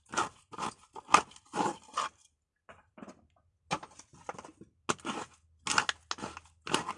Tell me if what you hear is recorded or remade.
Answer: recorded